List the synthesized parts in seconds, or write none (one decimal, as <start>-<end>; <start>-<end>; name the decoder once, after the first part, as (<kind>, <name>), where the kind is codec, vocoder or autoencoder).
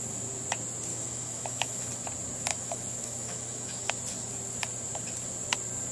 0.9-1.9 (autoencoder, DAC-VAE); 2.5-3.9